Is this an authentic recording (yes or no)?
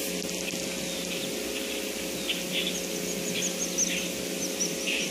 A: yes